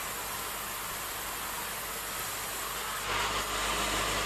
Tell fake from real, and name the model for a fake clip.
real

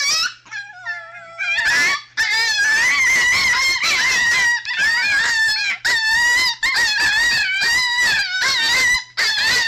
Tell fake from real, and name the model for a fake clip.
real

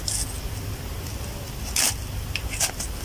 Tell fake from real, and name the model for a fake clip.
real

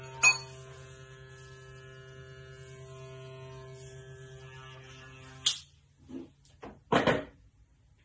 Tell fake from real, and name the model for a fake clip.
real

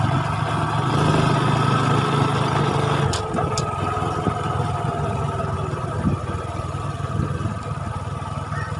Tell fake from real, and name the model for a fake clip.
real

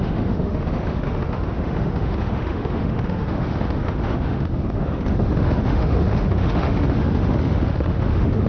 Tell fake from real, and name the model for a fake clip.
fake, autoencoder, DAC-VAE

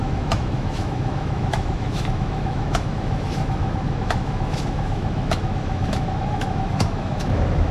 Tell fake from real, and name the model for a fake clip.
fake, autoencoder, DAC-VAE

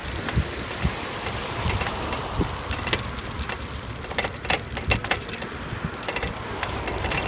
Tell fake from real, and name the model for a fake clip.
real